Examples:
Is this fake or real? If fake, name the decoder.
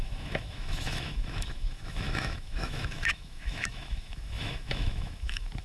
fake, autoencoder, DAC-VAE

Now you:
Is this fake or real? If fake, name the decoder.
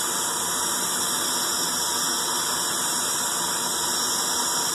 real